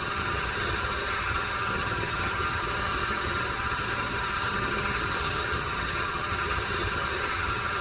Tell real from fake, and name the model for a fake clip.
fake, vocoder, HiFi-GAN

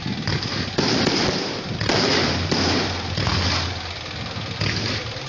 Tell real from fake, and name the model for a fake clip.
real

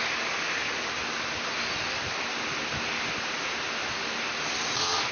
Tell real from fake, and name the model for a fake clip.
real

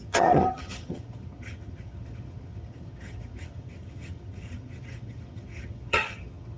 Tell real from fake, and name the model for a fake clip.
fake, vocoder, HiFi-GAN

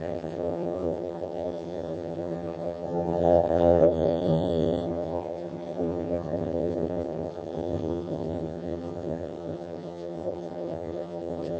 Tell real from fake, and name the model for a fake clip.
fake, vocoder, HiFi-GAN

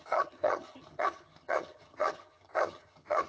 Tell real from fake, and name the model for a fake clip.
fake, vocoder, HiFi-GAN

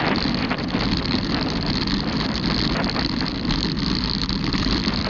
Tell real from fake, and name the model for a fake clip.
real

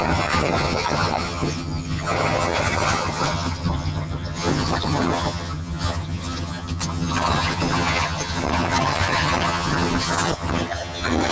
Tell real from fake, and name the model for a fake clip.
fake, vocoder, HiFi-GAN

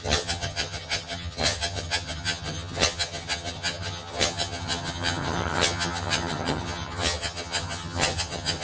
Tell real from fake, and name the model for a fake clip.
fake, vocoder, HiFi-GAN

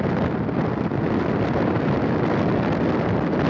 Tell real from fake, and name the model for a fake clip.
real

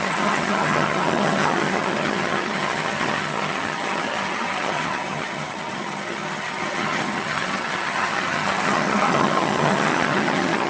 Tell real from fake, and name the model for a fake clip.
fake, vocoder, HiFi-GAN